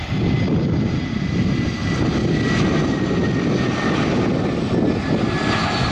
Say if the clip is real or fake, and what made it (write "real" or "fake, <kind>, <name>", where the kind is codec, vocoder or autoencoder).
real